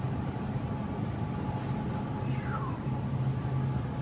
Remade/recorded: recorded